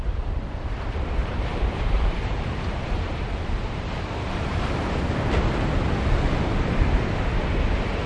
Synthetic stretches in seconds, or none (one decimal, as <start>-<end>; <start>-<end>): 1.2-5.0